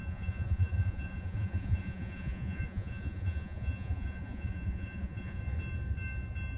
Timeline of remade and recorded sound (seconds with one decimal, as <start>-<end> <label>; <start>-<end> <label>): 0.0-5.4 remade; 5.4-6.6 recorded